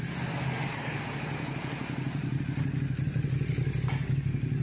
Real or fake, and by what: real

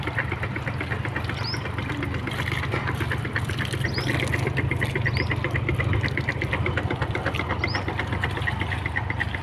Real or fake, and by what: real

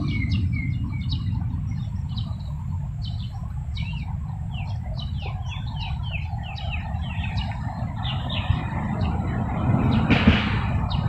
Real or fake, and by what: fake, vocoder, BigVGAN v2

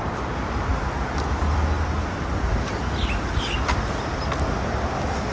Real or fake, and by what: real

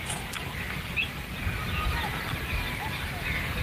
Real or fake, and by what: real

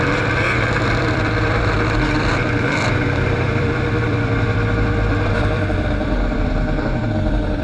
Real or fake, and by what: fake, vocoder, BigVGAN v2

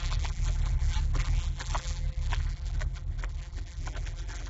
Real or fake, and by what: fake, vocoder, BigVGAN v2